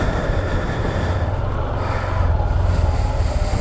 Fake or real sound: real